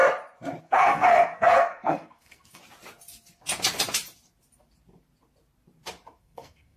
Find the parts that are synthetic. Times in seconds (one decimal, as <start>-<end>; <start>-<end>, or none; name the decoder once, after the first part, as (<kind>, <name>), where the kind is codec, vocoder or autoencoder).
0.6-2.6 (codec, SNAC); 6.2-6.8